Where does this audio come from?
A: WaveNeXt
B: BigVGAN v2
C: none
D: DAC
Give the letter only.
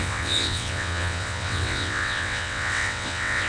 A